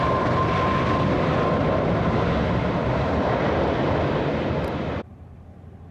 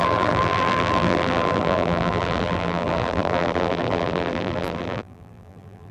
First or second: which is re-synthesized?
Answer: second